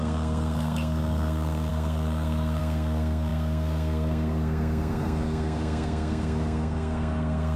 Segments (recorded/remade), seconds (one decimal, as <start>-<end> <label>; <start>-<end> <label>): 0.0-7.6 remade